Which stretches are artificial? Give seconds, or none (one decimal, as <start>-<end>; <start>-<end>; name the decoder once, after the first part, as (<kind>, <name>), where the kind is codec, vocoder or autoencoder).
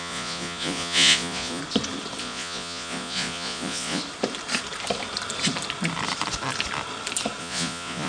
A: 0.0-1.6 (vocoder, Vocos); 2.2-4.0; 7.4-8.1